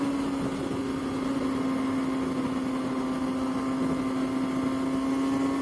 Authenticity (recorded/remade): recorded